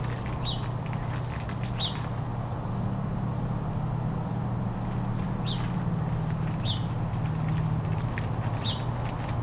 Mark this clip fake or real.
real